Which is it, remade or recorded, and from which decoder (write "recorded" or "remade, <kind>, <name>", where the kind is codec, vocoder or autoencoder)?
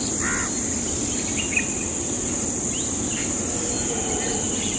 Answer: recorded